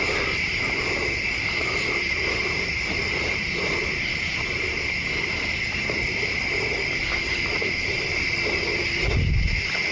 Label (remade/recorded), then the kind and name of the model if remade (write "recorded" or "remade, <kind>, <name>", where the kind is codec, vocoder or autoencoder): recorded